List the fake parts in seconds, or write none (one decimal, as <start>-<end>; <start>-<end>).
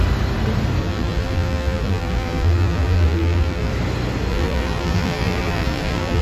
0.8-3.7; 4.3-6.2